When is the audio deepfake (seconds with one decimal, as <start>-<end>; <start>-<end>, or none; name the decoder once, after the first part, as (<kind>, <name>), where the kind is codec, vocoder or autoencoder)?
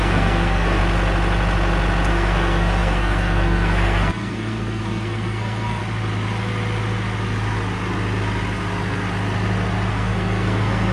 0.0-0.8 (codec, SNAC); 2.1-5.8; 9.9-10.9